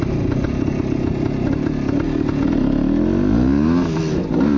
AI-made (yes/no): no